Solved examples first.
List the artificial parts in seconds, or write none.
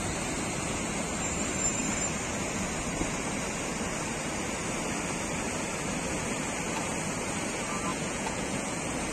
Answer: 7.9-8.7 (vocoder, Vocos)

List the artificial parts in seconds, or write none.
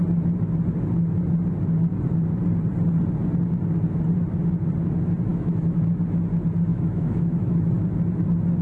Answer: 5.3-5.8 (autoencoder, DAC-VAE); 6.7-7.7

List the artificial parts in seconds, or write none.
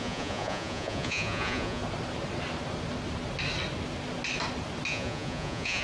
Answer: 0.0-1.8 (vocoder, Vocos); 4.9-5.8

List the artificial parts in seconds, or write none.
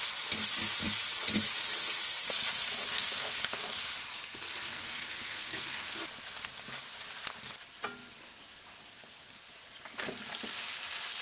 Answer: 2.8-3.3 (codec, SNAC); 4.7-6.0; 8.9-9.4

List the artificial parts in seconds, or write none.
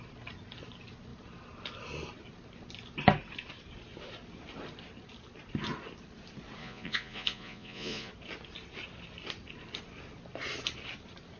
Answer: 6.6-8.1 (vocoder, Vocos)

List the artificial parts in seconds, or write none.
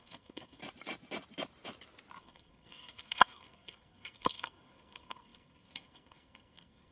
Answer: 0.0-0.6 (codec, SNAC); 2.2-6.9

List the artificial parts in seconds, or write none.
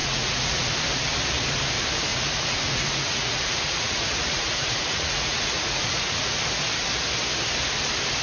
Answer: 0.0-0.7 (vocoder, Vocos); 2.1-6.4